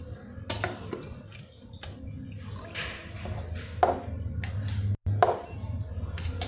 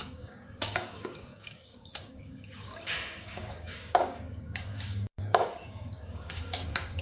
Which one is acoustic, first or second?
first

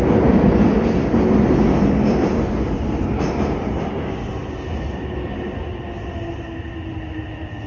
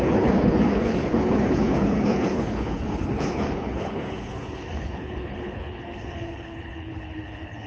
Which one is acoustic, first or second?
first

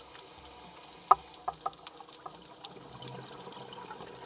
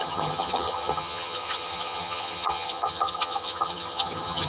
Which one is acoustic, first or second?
first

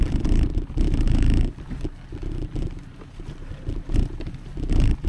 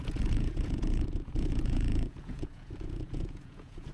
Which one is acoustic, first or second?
first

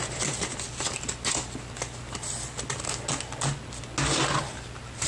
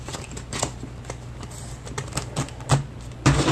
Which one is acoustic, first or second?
first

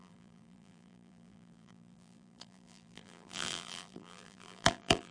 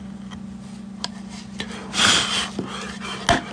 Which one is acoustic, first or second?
second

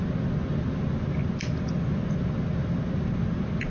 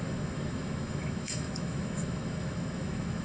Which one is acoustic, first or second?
first